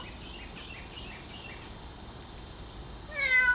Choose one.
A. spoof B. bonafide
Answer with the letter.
B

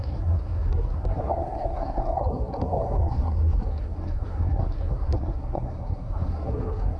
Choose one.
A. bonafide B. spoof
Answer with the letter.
B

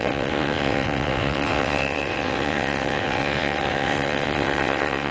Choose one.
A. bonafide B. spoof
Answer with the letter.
B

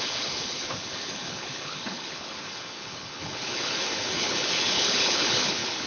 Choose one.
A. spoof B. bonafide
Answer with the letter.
A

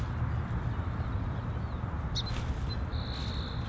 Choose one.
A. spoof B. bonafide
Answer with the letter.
B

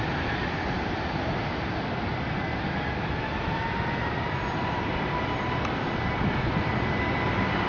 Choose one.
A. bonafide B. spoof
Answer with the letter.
A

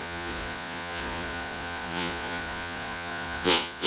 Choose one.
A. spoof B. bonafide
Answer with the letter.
A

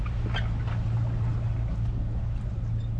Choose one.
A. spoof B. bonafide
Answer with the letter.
B